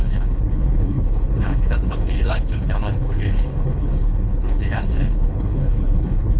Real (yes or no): no